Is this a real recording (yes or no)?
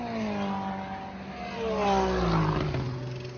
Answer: yes